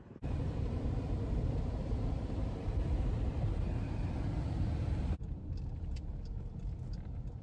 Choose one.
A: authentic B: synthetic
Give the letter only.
B